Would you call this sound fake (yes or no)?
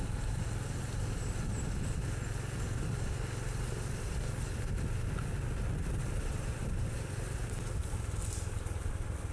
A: no